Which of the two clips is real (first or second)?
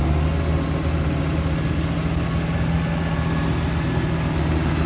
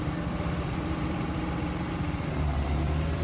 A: first